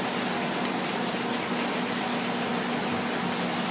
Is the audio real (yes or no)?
yes